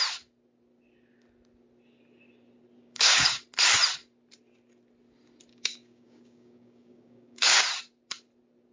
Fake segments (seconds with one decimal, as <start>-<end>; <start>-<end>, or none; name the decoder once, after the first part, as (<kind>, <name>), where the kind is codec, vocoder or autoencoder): 2.8-3.4 (codec, DAC); 5.5-7.6